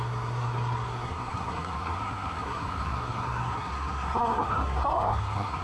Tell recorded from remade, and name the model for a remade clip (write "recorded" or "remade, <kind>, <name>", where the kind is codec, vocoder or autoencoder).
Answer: remade, codec, SNAC